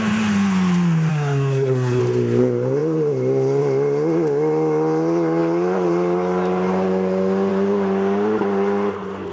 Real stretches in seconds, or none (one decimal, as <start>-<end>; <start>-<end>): 0.0-1.1; 2.0-9.3